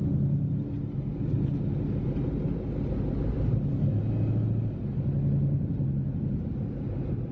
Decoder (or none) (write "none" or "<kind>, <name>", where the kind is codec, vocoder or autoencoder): none